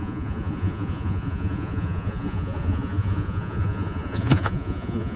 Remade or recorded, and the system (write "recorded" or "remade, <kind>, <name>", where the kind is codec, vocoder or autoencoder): remade, vocoder, Vocos